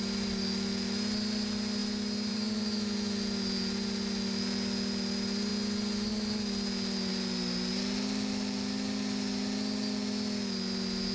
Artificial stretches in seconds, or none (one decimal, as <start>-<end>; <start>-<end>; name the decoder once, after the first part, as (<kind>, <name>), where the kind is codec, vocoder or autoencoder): 1.8-2.7 (vocoder, BigVGAN v2)